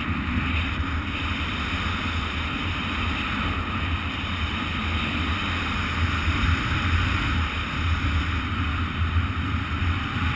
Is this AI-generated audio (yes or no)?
no